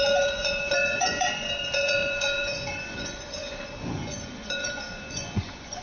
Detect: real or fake fake